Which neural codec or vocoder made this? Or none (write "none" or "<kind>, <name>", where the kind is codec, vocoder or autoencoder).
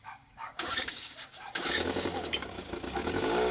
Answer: codec, DAC